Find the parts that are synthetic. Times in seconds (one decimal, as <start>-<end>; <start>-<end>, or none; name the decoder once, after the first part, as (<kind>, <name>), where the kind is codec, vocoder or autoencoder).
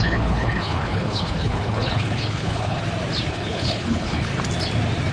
0.0-2.8 (codec, HILCodec); 3.3-4.3